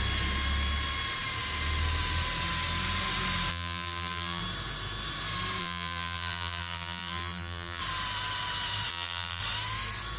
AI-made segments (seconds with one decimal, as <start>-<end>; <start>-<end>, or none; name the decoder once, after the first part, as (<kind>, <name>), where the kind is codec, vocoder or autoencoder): 3.5-4.4 (vocoder, BigVGAN v2); 5.6-7.8; 8.9-9.4